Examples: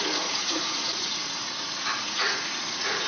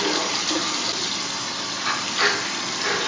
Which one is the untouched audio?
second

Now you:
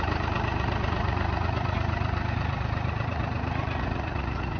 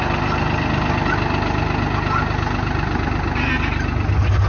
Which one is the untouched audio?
second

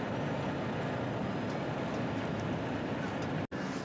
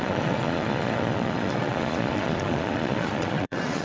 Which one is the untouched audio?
first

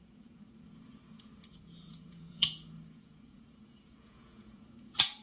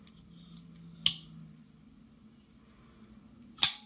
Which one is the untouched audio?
second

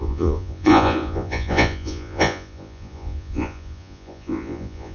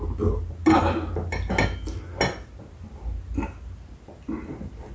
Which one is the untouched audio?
second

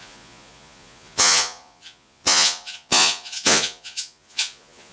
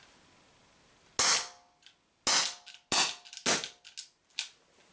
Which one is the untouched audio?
second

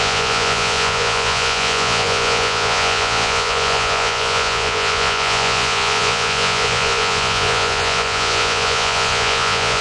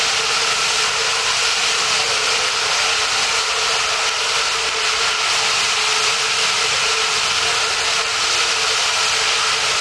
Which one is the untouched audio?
second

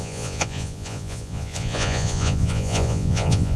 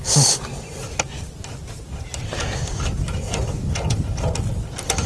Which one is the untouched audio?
second